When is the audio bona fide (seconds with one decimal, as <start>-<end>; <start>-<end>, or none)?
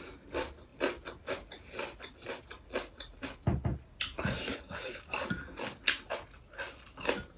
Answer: 0.0-4.5; 5.8-7.4